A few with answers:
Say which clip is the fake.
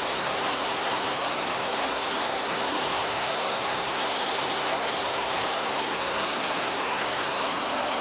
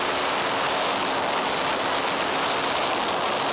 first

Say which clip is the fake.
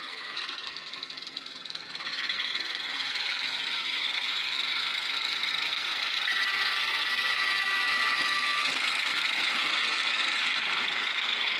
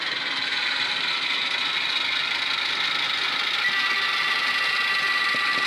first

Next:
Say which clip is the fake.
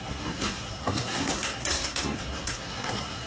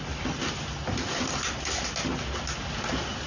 first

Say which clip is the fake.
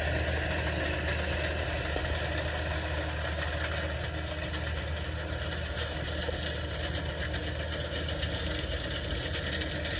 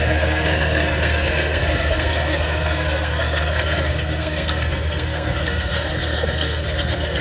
second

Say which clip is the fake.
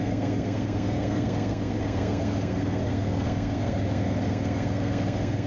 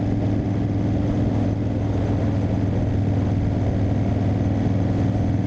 first